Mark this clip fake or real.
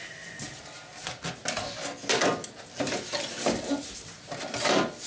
real